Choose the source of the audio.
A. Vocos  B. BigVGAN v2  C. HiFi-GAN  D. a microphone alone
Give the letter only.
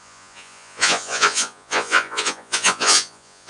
A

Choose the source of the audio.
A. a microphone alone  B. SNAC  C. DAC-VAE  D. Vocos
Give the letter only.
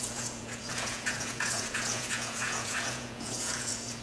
D